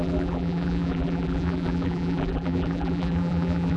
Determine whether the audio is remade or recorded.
remade